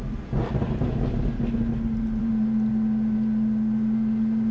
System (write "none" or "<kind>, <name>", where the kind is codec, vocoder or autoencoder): none